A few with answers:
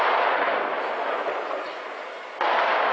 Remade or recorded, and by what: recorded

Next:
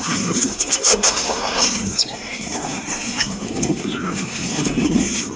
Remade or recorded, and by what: remade, codec, SNAC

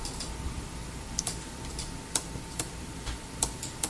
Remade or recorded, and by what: remade, vocoder, BigVGAN v2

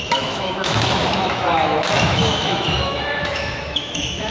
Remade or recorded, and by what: remade, autoencoder, DAC-VAE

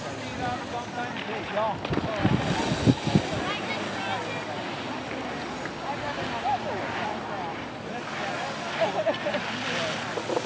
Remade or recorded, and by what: recorded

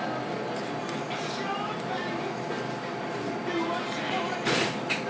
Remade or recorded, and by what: recorded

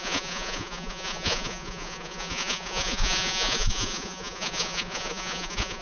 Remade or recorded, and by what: remade, vocoder, Vocos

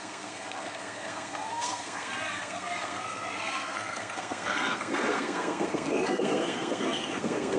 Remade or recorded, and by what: remade, codec, SNAC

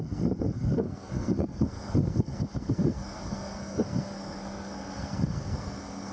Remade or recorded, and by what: remade, codec, SNAC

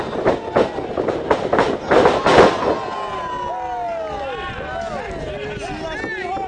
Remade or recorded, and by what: recorded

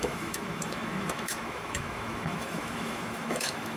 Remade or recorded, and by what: remade, autoencoder, DAC-VAE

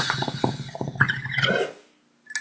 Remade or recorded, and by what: recorded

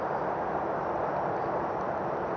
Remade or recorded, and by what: recorded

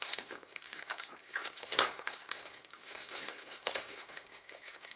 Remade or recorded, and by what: remade, codec, SNAC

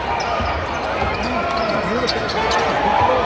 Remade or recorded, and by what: recorded